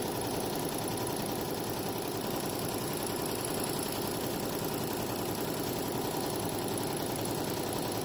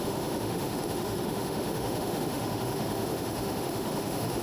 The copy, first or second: second